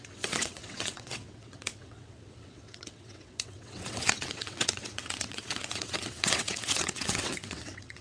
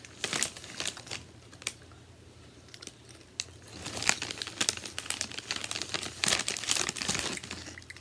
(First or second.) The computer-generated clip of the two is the first